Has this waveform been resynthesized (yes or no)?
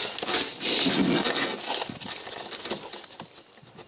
no